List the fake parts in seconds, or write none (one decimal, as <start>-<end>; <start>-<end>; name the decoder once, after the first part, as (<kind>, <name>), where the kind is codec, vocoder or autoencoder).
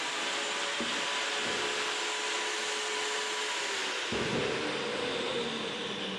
none